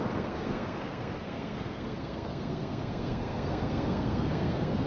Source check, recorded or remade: remade